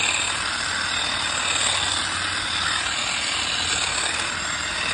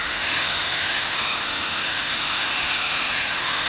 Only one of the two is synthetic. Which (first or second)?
second